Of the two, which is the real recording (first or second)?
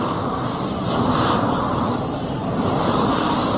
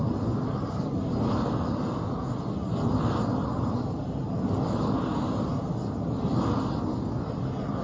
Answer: second